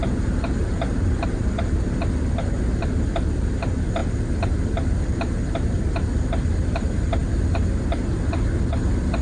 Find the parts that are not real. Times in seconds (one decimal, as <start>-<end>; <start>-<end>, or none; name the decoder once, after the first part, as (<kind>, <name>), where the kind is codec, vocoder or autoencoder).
0.6-1.4 (vocoder, BigVGAN v2); 4.0-5.5